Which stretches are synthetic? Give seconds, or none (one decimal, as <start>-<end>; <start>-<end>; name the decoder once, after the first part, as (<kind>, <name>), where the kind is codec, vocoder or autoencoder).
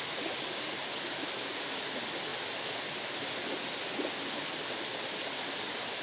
none